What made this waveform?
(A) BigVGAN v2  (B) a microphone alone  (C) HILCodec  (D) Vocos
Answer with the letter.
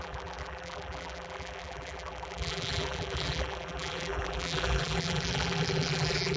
A